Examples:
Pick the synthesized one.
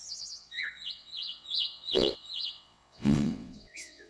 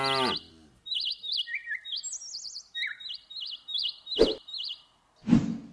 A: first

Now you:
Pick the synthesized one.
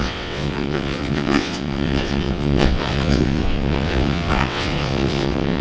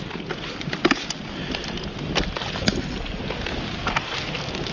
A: first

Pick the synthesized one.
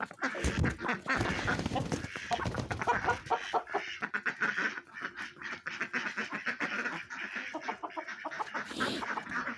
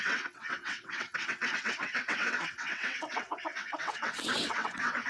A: second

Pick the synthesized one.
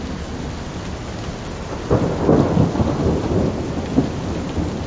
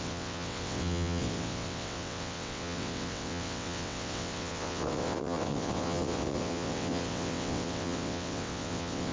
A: second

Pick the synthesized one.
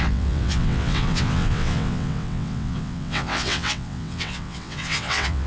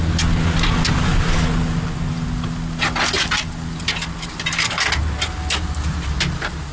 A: first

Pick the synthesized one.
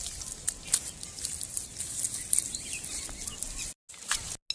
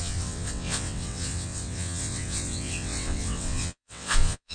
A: second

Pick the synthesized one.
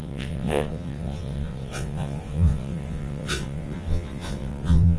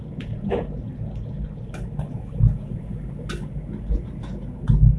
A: first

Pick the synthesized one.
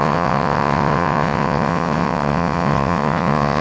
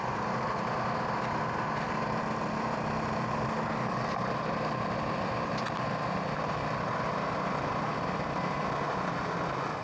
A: first